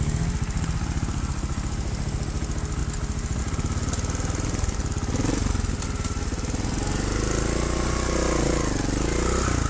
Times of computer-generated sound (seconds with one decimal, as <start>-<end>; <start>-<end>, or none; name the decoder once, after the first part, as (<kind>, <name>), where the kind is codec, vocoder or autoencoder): none